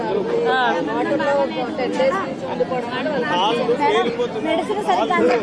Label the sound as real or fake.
real